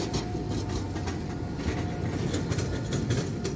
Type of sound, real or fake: real